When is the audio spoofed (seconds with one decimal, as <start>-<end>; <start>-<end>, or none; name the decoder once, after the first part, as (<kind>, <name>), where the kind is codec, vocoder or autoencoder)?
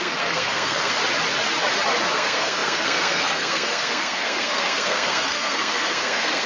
0.0-1.0 (codec, SNAC); 2.1-6.5